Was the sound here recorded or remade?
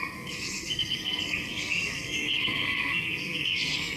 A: remade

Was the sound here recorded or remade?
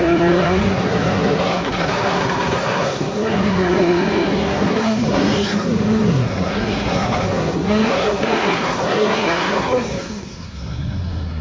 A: remade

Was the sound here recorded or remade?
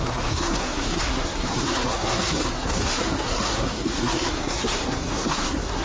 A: remade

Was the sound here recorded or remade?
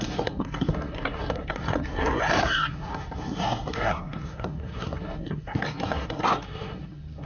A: remade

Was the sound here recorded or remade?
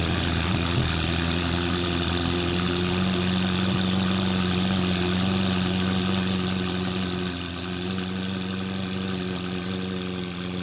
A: recorded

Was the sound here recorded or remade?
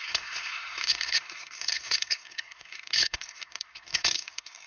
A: remade